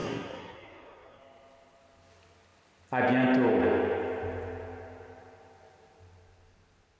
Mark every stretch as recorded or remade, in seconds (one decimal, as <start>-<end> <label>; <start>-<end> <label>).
0.0-1.2 remade; 1.2-7.0 recorded